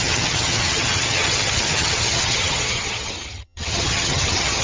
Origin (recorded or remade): remade